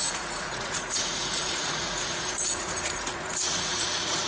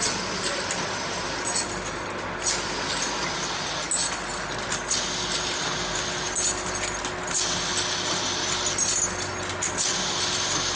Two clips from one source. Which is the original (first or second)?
second